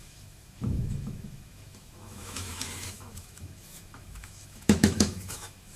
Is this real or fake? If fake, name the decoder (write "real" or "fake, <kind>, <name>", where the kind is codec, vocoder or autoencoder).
fake, autoencoder, DAC-VAE